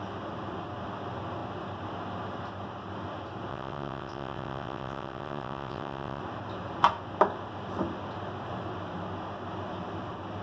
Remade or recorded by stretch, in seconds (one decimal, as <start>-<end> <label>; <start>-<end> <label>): 0.0-3.5 recorded; 3.5-6.2 remade; 6.2-10.4 recorded